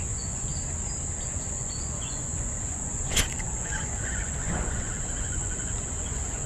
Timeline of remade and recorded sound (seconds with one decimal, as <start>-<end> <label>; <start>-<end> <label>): 0.0-0.5 remade; 0.5-1.2 recorded; 1.2-6.5 remade